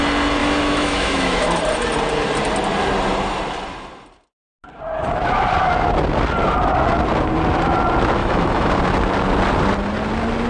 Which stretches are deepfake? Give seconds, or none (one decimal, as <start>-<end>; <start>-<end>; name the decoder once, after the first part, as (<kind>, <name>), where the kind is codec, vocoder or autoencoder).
0.4-1.6 (autoencoder, DAC-VAE); 8.2-8.7